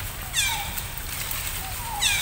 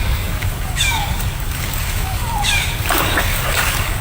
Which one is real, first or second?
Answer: first